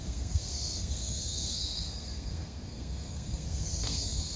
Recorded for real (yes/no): no